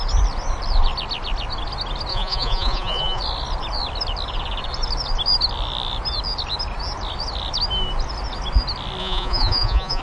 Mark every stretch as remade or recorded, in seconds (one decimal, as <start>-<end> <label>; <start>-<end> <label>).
0.0-2.1 recorded; 2.1-3.2 remade; 3.2-9.0 recorded; 9.0-10.0 remade